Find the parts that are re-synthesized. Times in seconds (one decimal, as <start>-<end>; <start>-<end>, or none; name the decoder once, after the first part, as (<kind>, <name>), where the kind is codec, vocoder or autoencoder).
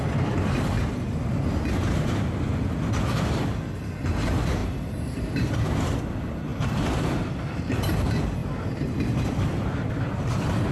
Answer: 4.6-6.0 (vocoder, BigVGAN v2); 8.4-9.9